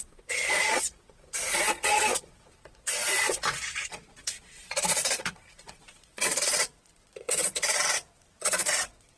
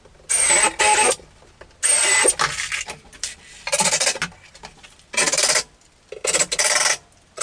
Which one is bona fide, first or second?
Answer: second